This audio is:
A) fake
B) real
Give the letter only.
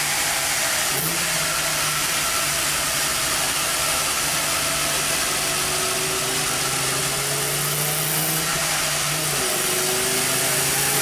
B